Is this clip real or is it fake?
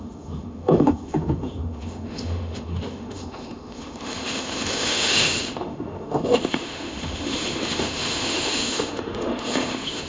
fake